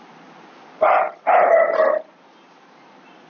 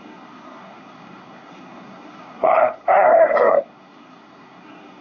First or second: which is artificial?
second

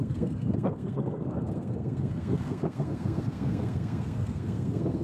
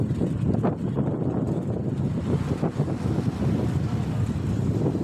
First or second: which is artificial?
first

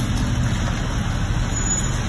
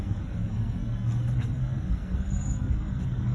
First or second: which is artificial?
second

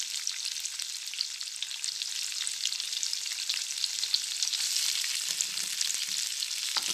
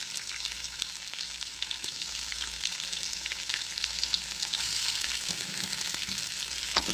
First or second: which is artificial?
second